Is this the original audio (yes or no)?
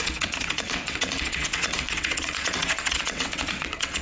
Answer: no